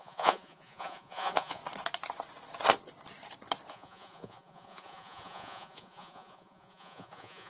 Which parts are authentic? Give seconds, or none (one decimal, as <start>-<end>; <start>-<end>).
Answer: 1.6-3.7